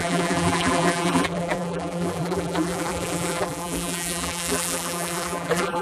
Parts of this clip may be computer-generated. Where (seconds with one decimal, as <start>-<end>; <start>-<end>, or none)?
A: 0.0-5.8